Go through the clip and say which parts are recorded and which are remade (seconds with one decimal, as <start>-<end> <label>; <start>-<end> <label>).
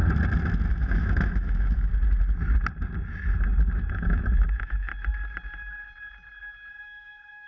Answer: 0.0-0.7 recorded; 0.7-1.9 remade; 1.9-3.9 recorded; 3.9-4.9 remade; 4.9-6.7 recorded; 6.7-7.5 remade